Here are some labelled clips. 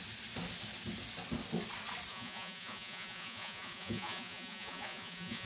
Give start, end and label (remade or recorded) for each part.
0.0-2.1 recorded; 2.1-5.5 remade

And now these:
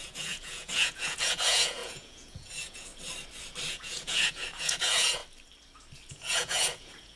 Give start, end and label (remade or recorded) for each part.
0.0-2.9 remade; 2.9-3.7 recorded; 3.7-5.2 remade; 5.2-6.1 recorded; 6.1-7.2 remade

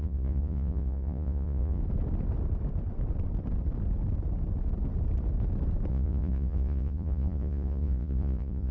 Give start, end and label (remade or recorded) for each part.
0.0-1.8 remade; 1.8-5.9 recorded; 5.9-8.7 remade

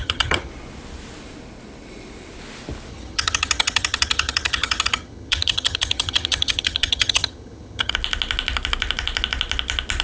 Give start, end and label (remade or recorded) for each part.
0.0-0.5 remade; 0.5-2.9 recorded; 2.9-7.9 remade; 7.9-10.0 recorded

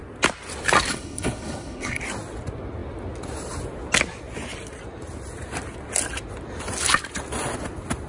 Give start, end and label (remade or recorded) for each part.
0.0-0.9 recorded; 0.9-2.0 remade; 2.0-8.1 recorded

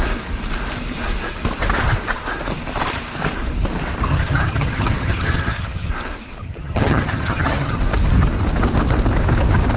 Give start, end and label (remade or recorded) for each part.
0.0-4.1 recorded; 4.1-5.9 remade; 5.9-6.4 recorded; 6.4-7.8 remade; 7.8-9.8 recorded

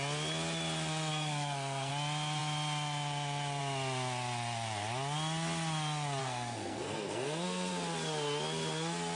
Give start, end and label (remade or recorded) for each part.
0.0-1.1 recorded; 1.1-1.9 remade; 1.9-6.2 recorded; 6.2-7.7 remade; 7.7-9.2 recorded

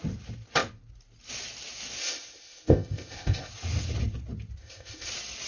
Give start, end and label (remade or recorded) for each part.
0.0-2.0 recorded; 2.0-3.5 remade; 3.5-4.6 recorded; 4.6-5.1 remade; 5.1-5.5 recorded